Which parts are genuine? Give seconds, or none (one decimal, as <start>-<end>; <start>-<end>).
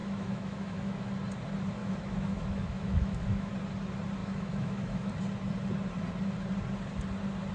1.1-1.8; 3.5-4.2; 5.1-7.5